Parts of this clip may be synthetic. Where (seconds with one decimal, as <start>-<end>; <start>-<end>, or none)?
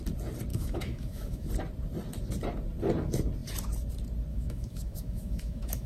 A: 0.5-1.5; 4.3-5.9